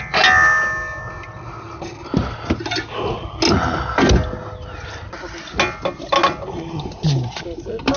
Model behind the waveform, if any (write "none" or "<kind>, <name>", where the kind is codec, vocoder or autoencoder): none